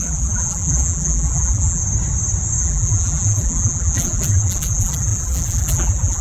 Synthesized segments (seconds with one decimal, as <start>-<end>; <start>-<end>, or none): 0.0-1.8; 2.6-6.2